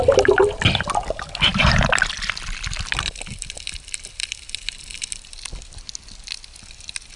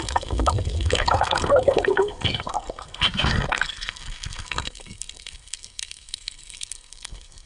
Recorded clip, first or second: first